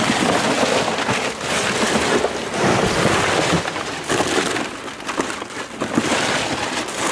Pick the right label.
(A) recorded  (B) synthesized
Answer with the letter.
A